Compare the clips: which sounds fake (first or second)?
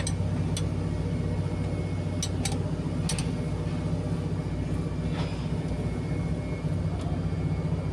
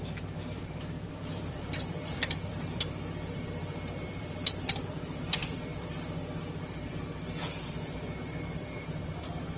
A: second